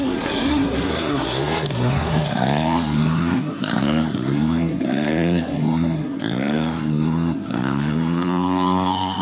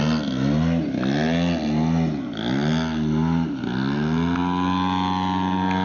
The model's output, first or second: first